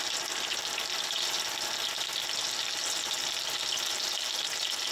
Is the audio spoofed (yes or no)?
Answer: no